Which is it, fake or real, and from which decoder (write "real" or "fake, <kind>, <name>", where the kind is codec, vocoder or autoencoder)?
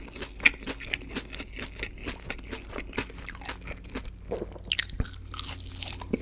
real